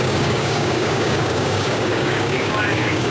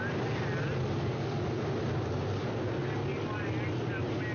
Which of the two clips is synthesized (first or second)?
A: first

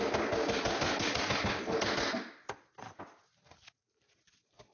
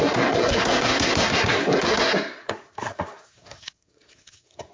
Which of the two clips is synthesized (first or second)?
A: second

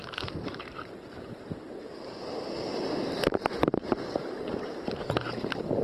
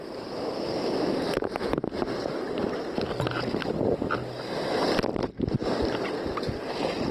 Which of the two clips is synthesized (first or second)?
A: first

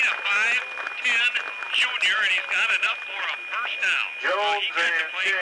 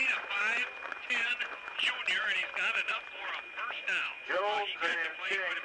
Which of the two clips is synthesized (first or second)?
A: second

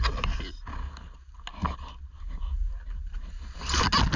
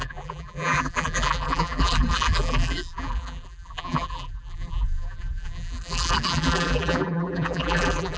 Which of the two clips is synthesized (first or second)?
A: second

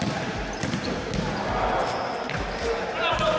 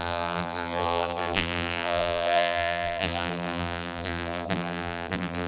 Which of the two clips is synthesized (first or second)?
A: second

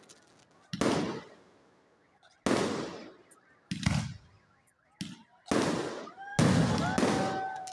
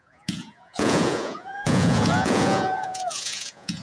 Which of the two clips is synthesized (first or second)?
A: second